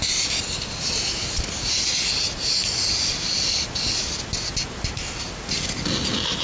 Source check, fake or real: real